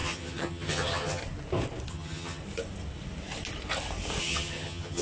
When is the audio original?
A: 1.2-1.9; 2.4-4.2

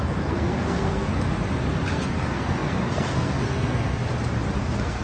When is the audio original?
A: 1.1-1.9; 4.0-4.6

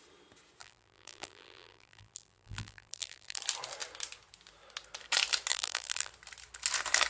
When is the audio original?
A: 0.0-0.6; 3.4-5.5; 6.1-7.1

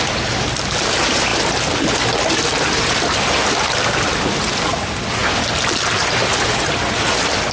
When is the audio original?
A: 0.0-7.5

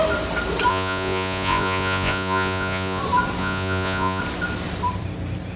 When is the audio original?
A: 0.0-0.7; 3.0-3.4; 4.2-5.6

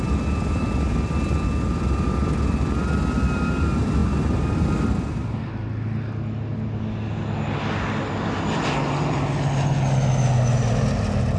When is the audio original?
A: 0.0-11.4

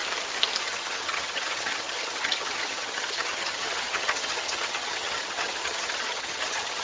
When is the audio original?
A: 0.0-0.6